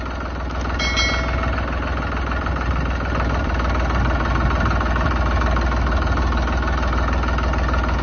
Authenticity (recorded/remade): recorded